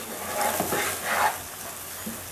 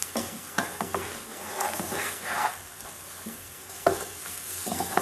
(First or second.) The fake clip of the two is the second